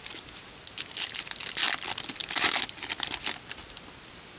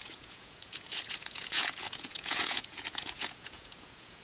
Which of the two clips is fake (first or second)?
second